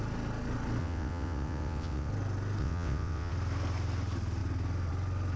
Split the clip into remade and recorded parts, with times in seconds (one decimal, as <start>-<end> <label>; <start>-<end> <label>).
0.0-0.8 recorded; 0.8-2.1 remade; 2.1-2.6 recorded; 2.6-3.3 remade; 3.3-5.4 recorded